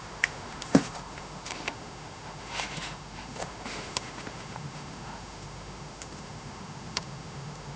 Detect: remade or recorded remade